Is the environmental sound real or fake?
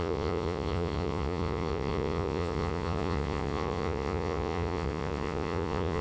fake